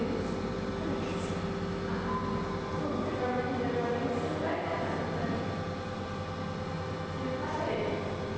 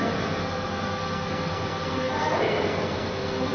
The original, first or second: first